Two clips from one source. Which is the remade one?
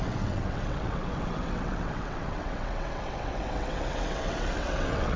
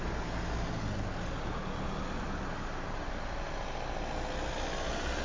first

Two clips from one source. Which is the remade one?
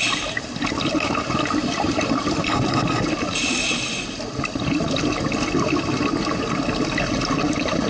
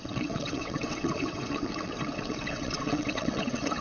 second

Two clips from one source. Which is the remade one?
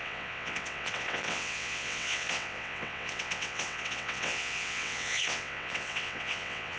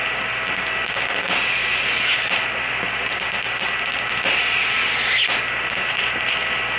first